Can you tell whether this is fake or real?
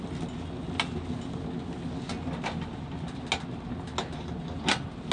real